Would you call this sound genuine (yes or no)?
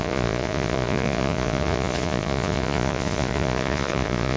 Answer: no